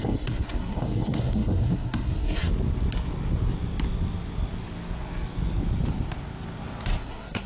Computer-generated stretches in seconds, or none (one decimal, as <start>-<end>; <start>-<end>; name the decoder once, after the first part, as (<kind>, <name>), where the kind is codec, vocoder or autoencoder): 0.0-2.5 (codec, SNAC); 7.0-7.5